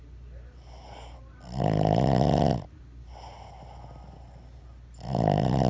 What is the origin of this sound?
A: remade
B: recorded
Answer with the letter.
B